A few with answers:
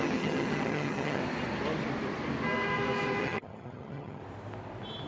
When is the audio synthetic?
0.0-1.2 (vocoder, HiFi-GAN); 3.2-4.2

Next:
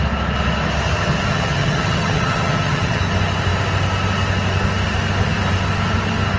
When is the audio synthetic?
1.3-3.0 (vocoder, HiFi-GAN)